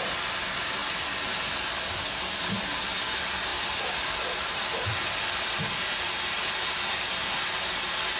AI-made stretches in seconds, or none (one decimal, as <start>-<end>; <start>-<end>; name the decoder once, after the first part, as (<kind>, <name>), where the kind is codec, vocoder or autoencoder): none